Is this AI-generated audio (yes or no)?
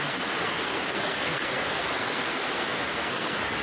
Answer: yes